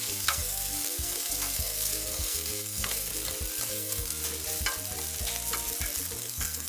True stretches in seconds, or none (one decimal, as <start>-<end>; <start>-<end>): 3.1-3.7; 4.2-6.2